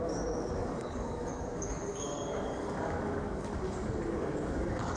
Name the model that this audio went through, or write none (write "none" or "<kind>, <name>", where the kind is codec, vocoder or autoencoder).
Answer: codec, DAC